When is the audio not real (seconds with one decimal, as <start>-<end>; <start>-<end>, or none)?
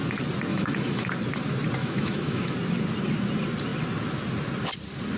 0.5-1.1; 1.8-2.5